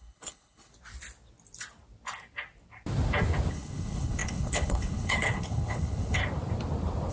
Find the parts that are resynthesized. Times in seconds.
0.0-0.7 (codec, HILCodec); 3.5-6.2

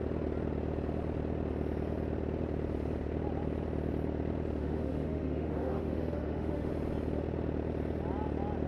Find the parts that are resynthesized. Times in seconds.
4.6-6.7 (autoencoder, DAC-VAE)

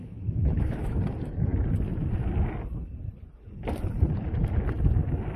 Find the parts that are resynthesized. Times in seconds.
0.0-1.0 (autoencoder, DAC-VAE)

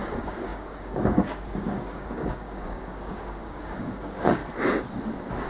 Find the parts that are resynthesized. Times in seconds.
0.0-4.4 (codec, DAC)

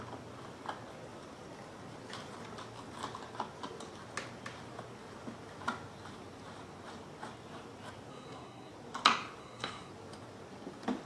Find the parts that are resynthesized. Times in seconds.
8.1-8.7 (codec, SNAC); 9.4-9.9

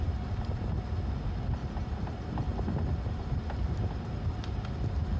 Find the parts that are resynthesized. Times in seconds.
none

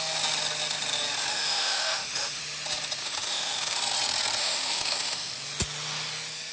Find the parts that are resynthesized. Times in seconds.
1.3-2.4 (autoencoder, DAC-VAE); 3.0-3.8; 4.4-5.3